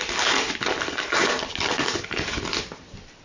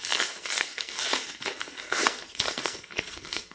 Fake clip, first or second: second